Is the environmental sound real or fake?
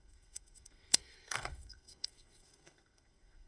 fake